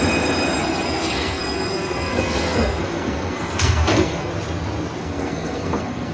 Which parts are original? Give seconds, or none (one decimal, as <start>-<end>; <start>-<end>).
0.0-0.6; 4.3-5.0